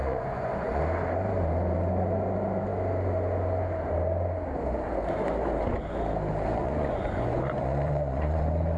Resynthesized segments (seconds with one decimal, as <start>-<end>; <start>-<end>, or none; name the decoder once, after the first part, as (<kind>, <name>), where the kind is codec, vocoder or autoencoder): 0.0-0.8 (vocoder, Vocos); 6.6-8.4